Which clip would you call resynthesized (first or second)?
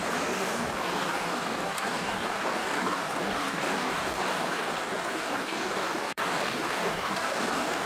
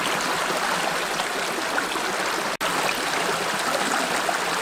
first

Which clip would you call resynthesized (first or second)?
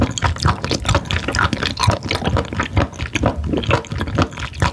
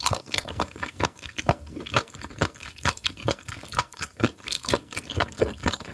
second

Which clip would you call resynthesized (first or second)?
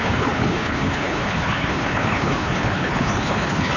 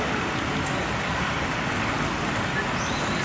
first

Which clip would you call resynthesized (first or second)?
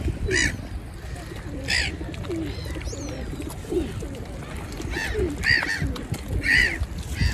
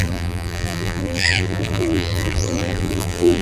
second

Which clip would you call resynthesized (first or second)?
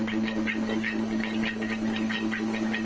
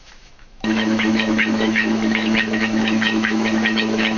second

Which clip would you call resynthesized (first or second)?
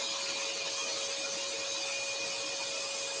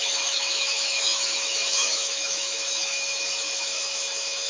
second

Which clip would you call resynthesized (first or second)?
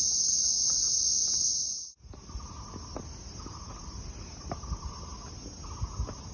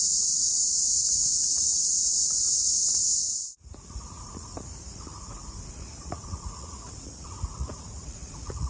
second